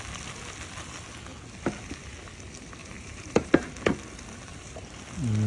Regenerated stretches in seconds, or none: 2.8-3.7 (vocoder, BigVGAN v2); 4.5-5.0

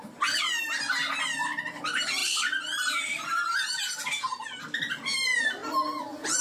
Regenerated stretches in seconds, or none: none

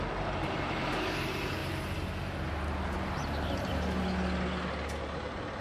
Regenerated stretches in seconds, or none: 0.0-1.6 (vocoder, BigVGAN v2); 5.0-5.6

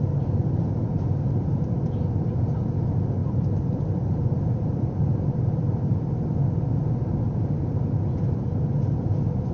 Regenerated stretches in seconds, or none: 3.2-5.0 (vocoder, BigVGAN v2)

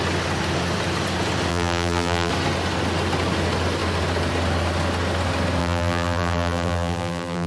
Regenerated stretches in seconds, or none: 1.5-2.3 (vocoder, BigVGAN v2); 5.6-7.5